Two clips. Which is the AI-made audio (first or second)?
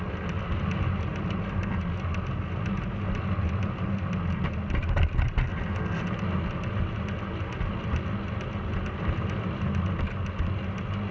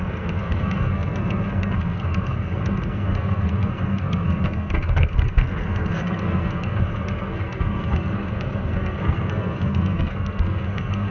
second